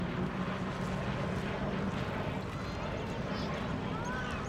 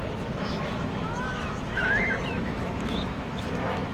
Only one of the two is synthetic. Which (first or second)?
second